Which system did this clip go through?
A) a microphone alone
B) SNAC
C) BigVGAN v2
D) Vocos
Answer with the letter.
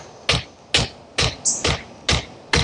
A